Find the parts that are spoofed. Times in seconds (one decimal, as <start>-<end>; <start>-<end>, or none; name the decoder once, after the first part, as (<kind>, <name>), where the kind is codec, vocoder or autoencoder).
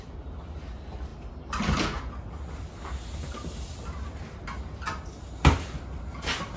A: none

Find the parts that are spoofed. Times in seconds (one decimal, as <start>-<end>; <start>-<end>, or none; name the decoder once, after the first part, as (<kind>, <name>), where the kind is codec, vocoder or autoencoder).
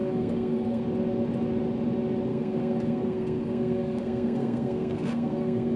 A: 0.0-0.8 (codec, SNAC); 2.3-5.8